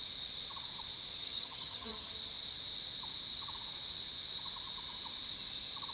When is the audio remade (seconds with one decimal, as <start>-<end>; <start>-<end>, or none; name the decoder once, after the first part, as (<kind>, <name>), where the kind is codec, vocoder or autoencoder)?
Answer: 1.2-2.1 (vocoder, HiFi-GAN)